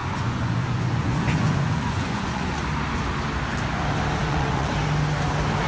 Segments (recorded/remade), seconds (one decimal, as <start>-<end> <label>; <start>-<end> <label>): 0.0-2.6 remade; 2.6-4.2 recorded; 4.2-4.7 remade; 4.7-5.7 recorded